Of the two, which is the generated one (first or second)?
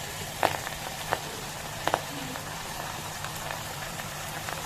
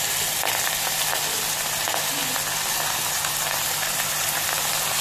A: first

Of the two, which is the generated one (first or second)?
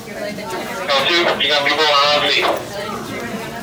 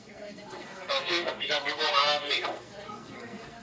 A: second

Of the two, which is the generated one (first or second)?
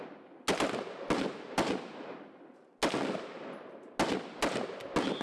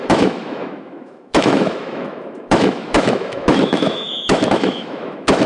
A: second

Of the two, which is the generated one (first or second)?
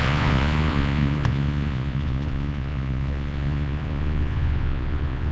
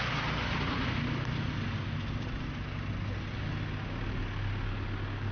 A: first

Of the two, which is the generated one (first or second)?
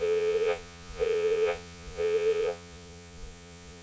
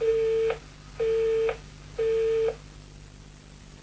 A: first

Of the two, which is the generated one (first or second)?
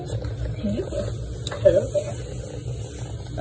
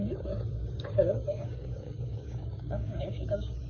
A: second